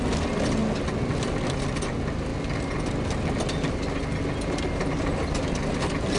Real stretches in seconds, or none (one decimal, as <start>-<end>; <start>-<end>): 0.0-6.2